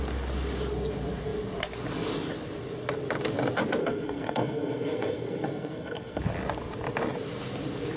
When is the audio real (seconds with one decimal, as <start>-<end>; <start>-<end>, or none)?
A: 0.0-3.8; 6.2-8.0